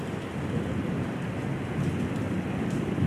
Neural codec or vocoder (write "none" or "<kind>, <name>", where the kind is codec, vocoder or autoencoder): none